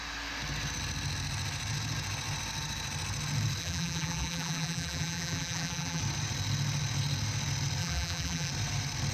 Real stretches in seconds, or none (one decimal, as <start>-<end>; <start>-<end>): 0.0-3.6; 6.0-7.8; 8.5-9.1